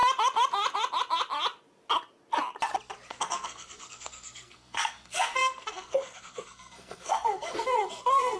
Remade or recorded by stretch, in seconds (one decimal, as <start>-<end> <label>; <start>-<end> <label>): 0.0-3.1 recorded; 3.1-8.4 remade